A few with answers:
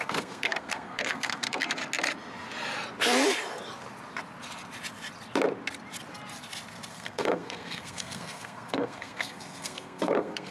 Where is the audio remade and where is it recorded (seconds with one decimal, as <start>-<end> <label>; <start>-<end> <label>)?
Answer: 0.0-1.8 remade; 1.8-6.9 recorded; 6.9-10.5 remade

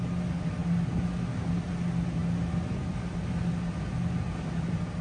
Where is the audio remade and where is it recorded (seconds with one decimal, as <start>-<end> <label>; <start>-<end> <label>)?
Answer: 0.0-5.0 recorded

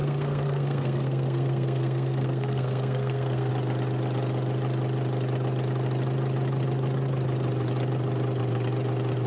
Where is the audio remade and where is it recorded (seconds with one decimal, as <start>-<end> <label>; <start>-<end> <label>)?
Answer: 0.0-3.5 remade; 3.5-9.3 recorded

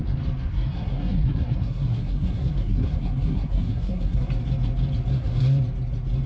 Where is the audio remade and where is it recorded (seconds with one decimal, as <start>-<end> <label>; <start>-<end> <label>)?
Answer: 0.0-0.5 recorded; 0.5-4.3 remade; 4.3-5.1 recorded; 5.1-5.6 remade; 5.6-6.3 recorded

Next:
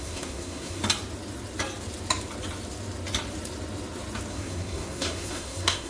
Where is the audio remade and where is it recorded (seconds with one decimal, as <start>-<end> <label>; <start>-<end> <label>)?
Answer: 0.0-0.8 remade; 0.8-4.3 recorded; 4.3-5.9 remade

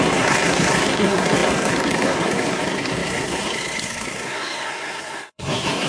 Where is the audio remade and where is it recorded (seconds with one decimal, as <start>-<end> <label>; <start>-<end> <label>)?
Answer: 0.0-5.9 remade

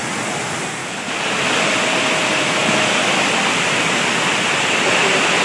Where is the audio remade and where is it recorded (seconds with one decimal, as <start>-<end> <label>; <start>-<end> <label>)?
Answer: 0.0-5.4 recorded